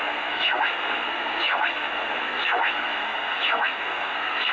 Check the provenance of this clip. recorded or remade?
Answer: remade